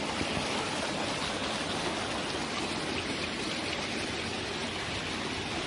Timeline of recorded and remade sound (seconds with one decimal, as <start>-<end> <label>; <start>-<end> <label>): 0.0-5.7 recorded